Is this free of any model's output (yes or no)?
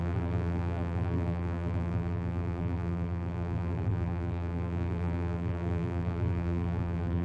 no